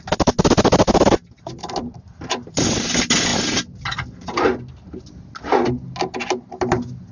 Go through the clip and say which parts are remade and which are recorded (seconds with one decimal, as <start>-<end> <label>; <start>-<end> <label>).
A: 0.0-7.1 recorded